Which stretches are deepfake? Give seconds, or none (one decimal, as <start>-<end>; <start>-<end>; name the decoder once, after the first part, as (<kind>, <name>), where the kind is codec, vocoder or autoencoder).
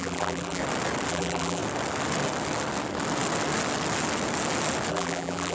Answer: 0.0-0.6 (vocoder, BigVGAN v2); 1.1-1.6; 4.9-5.5